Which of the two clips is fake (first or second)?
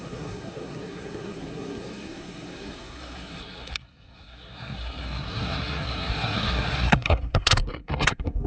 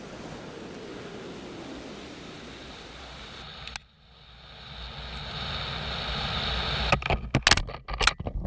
first